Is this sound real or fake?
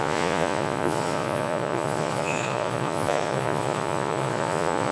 fake